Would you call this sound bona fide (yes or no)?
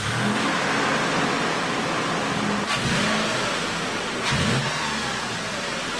yes